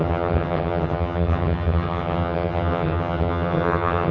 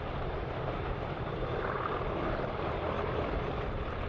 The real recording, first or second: second